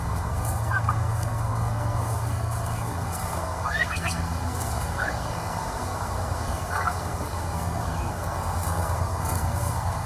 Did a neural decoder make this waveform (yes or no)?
yes